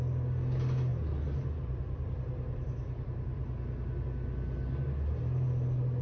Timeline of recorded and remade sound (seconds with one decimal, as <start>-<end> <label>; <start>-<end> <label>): 0.0-6.0 recorded